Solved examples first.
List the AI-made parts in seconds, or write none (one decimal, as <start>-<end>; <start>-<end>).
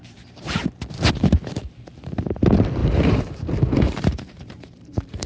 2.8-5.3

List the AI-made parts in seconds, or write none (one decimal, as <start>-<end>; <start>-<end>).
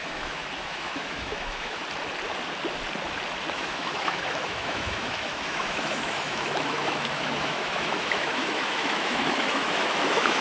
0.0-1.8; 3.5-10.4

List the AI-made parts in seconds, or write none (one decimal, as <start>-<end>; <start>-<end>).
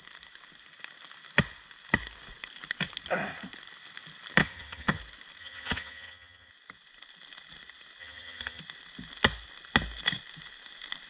4.4-5.0; 5.4-6.5; 8.0-8.6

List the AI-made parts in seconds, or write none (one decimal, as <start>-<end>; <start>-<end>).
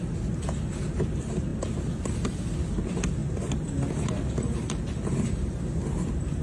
none